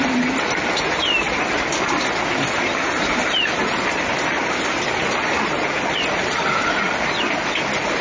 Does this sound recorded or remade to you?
recorded